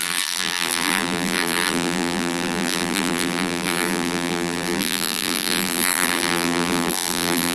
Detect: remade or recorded remade